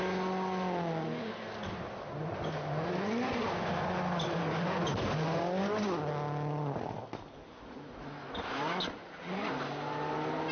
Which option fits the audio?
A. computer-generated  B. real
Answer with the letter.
B